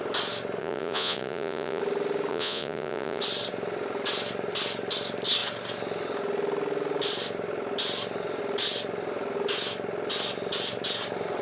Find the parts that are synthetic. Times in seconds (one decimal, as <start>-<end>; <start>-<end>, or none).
0.6-1.8; 2.3-3.2